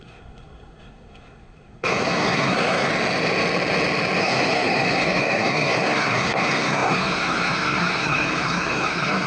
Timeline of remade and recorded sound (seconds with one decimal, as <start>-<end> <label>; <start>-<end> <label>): 0.0-2.9 remade; 2.9-4.2 recorded; 4.2-9.3 remade

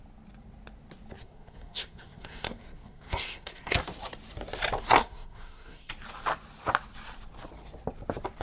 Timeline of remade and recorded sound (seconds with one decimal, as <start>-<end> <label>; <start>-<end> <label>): 0.0-1.2 recorded; 1.2-3.7 remade; 3.7-5.0 recorded; 5.0-5.9 remade; 5.9-8.4 recorded

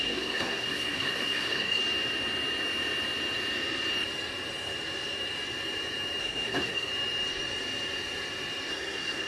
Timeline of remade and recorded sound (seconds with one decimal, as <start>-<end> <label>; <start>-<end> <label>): 0.0-1.8 remade; 1.8-6.2 recorded; 6.2-6.9 remade; 6.9-8.7 recorded; 8.7-9.3 remade

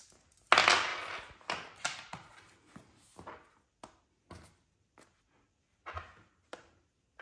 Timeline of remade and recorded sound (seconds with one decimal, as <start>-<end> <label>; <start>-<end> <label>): 0.0-7.2 recorded

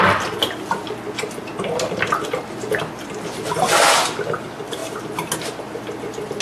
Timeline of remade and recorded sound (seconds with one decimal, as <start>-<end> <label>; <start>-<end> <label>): 0.0-6.4 recorded

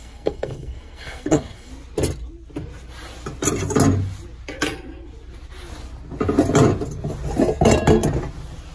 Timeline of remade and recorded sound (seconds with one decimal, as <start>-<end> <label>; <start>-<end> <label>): 0.0-1.7 remade; 1.7-8.7 recorded

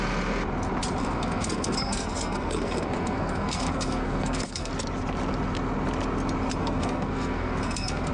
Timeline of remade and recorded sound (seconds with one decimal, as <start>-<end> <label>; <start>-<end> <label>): 0.0-1.0 recorded; 1.0-4.7 remade; 4.7-6.6 recorded; 6.6-8.1 remade